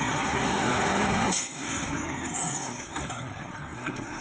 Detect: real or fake fake